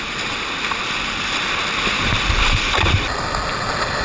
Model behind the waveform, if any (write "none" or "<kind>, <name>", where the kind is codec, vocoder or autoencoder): none